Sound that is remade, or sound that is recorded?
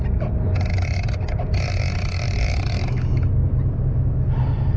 recorded